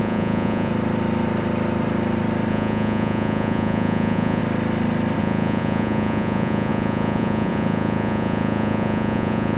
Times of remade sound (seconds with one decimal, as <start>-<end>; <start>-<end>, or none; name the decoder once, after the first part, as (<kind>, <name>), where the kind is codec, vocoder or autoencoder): 0.0-0.7 (vocoder, Vocos); 2.5-4.4; 5.2-9.6